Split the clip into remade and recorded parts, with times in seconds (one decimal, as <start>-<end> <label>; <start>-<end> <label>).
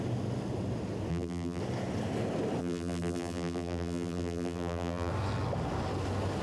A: 0.0-1.1 recorded; 1.1-1.6 remade; 1.6-2.6 recorded; 2.6-5.1 remade; 5.1-6.4 recorded